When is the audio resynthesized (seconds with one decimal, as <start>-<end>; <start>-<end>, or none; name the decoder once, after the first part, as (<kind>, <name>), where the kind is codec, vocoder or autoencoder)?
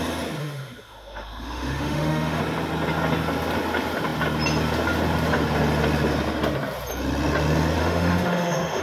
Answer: 0.4-2.4 (autoencoder, DAC-VAE); 7.8-8.8